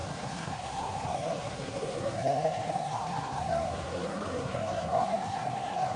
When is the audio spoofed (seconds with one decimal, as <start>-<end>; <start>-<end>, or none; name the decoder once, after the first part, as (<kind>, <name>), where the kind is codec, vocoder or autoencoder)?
0.0-6.0 (codec, SNAC)